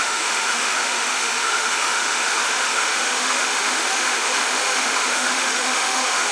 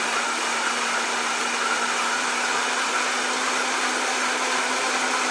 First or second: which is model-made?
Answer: first